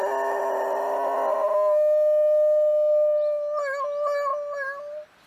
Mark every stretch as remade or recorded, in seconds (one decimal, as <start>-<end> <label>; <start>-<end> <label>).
0.0-5.3 recorded